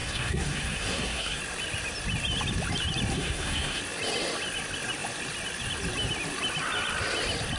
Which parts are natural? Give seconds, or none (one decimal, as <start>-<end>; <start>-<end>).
1.4-3.1; 3.8-7.6